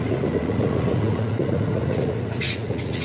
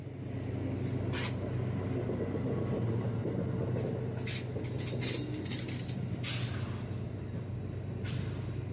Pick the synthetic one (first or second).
first